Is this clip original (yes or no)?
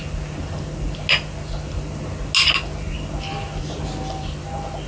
yes